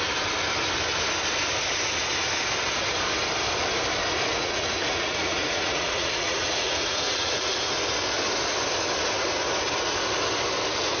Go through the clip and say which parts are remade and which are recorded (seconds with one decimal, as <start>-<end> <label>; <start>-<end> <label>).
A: 0.0-4.3 recorded; 4.3-7.7 remade; 7.7-11.0 recorded